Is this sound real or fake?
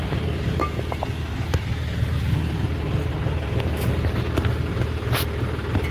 real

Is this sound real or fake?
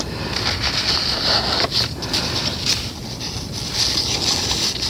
real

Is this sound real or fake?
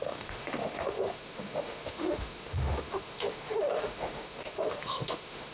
fake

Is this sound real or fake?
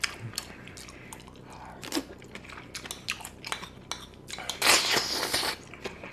real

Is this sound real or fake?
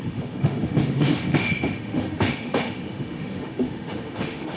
fake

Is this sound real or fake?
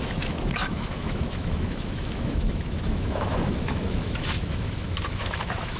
fake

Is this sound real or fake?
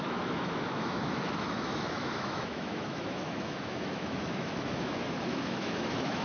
fake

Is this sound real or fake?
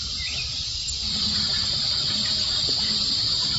real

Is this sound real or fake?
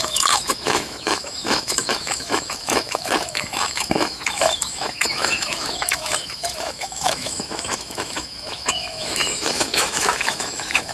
fake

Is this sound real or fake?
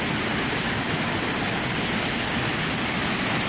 real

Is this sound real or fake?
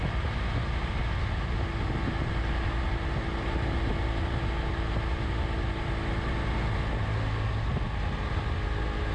real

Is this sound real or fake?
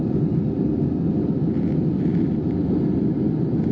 real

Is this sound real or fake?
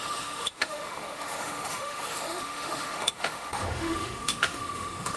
fake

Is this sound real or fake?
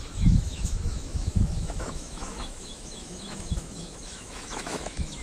fake